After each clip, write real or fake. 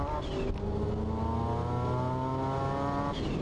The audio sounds real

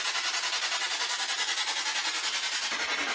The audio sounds real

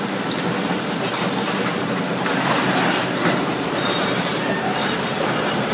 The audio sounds fake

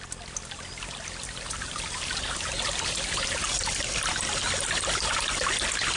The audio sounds real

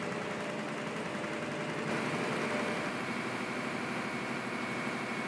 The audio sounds real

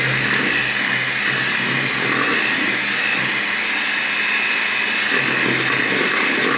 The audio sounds real